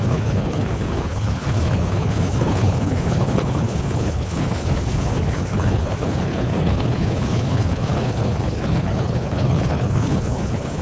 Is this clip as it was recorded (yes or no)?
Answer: no